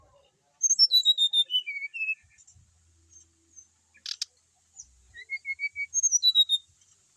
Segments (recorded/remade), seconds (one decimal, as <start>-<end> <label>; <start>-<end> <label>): 0.0-7.2 recorded